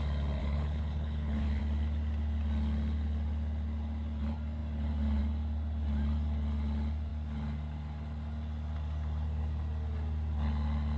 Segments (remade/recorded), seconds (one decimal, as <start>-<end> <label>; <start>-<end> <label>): 0.0-0.4 recorded; 0.4-1.6 remade; 1.6-11.0 recorded